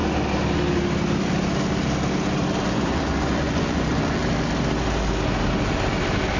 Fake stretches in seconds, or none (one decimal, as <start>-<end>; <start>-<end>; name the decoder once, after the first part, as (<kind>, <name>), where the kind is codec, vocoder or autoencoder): 2.7-4.2 (vocoder, Vocos)